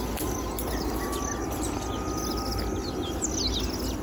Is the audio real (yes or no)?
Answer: yes